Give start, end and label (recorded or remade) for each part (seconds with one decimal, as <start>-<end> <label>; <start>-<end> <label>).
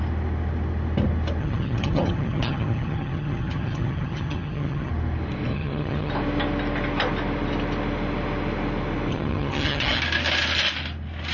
0.0-1.4 recorded; 1.4-4.9 remade; 4.9-5.5 recorded; 5.5-6.1 remade; 6.1-9.1 recorded; 9.1-10.0 remade; 10.0-11.3 recorded